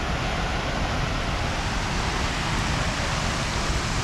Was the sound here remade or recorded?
recorded